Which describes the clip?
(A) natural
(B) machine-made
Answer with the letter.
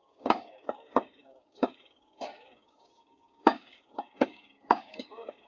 B